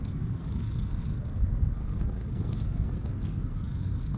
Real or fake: fake